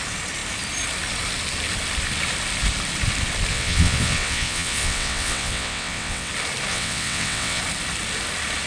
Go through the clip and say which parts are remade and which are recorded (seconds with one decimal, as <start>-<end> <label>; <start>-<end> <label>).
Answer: 0.0-3.5 recorded; 3.5-6.3 remade; 6.3-6.7 recorded; 6.7-7.6 remade; 7.6-8.7 recorded